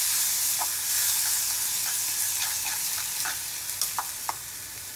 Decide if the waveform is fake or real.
real